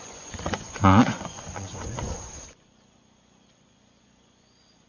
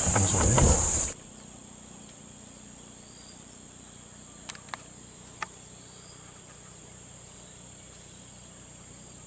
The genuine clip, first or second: second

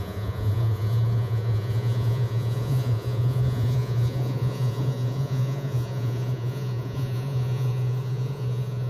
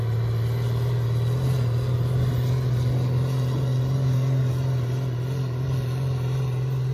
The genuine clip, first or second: second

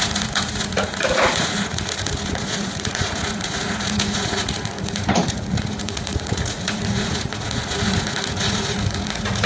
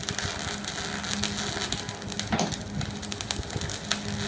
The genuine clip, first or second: second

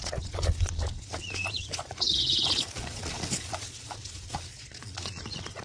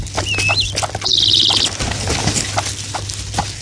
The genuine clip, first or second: second